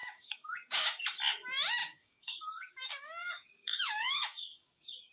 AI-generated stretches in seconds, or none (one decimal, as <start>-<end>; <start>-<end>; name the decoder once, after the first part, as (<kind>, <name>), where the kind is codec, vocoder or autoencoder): 0.0-1.0 (codec, DAC); 1.8-5.1